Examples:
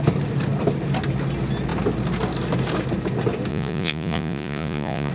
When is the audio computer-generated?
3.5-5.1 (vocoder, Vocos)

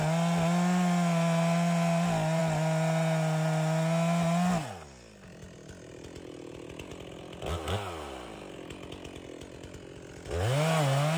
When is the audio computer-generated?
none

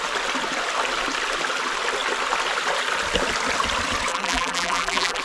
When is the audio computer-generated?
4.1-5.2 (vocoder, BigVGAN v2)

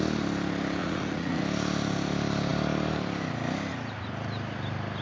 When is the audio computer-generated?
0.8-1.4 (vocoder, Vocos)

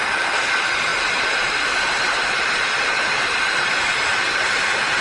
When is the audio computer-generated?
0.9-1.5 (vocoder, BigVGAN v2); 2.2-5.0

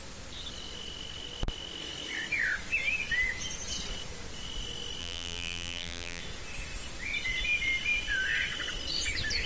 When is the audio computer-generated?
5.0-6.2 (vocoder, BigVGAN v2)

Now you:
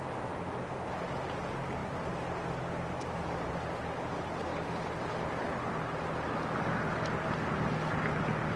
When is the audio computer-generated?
none